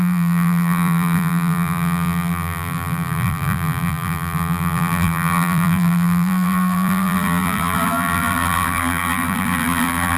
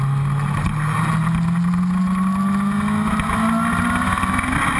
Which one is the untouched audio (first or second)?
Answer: second